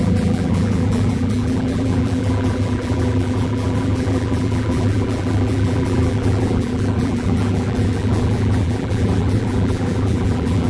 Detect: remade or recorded remade